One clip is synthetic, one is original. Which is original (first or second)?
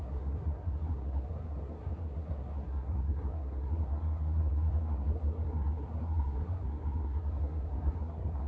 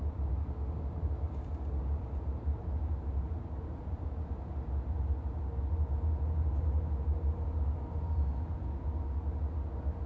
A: second